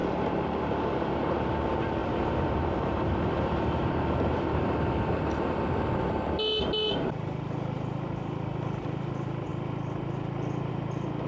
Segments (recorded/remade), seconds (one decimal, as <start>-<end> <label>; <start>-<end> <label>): 0.0-1.4 remade; 1.4-2.0 recorded; 2.0-5.7 remade; 5.7-11.3 recorded